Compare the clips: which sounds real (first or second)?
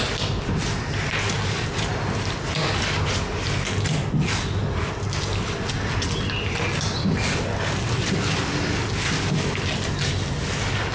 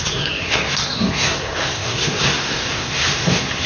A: first